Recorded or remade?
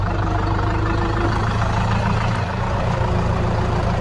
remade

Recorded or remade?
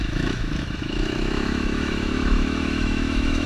remade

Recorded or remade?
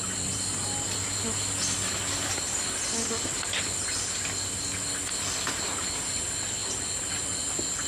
recorded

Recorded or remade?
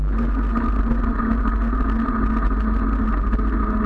recorded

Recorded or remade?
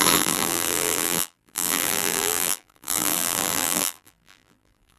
remade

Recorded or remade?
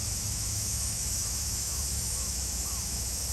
remade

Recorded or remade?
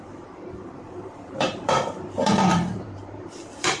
remade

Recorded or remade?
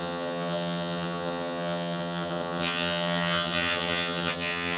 remade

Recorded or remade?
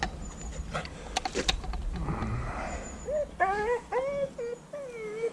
recorded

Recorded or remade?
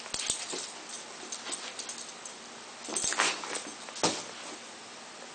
recorded